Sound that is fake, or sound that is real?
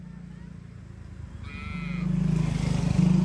real